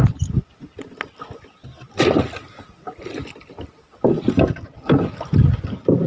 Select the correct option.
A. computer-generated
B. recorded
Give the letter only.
B